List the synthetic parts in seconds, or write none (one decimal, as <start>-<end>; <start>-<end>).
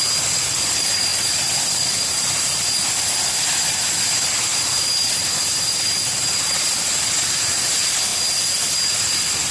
1.1-2.8; 4.5-7.0; 8.1-9.1